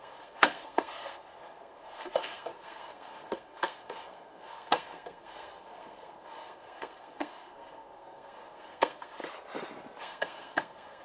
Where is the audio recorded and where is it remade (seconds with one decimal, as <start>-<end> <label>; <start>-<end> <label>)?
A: 0.0-9.2 remade; 9.2-10.0 recorded; 10.0-11.0 remade